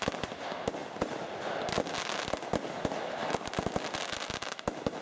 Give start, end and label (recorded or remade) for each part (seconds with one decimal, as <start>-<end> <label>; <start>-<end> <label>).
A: 0.0-5.0 recorded